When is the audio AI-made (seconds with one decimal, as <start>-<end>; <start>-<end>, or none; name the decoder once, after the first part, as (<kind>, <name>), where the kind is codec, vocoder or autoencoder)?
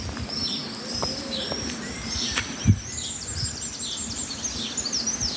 none